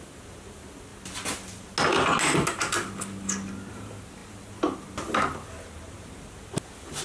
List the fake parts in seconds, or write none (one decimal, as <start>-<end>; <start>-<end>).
none